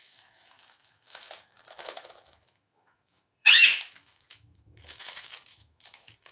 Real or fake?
fake